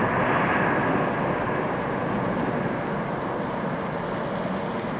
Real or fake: real